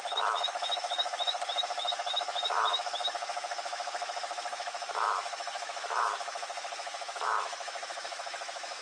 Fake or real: fake